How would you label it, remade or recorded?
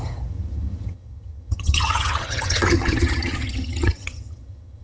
remade